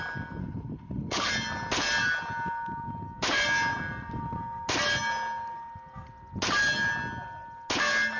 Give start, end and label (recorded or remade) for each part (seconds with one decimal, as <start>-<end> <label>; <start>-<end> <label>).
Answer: 0.0-0.4 recorded; 0.4-1.3 remade; 1.3-8.2 recorded